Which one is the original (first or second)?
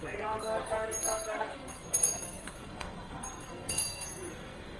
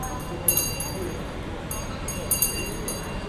second